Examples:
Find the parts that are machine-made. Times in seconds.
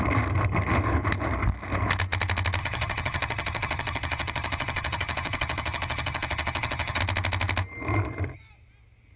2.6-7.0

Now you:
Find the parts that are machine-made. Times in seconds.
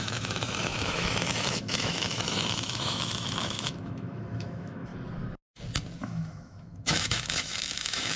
0.0-4.9; 6.0-8.2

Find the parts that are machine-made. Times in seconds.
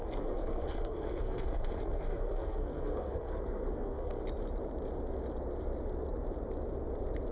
0.0-4.2